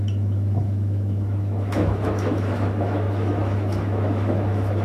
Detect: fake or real fake